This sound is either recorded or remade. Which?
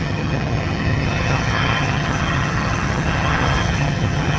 remade